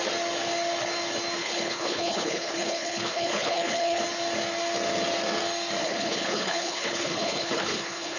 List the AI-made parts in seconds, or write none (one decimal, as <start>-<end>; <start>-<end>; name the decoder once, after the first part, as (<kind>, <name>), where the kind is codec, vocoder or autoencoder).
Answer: 1.4-4.0 (codec, HILCodec); 5.8-8.2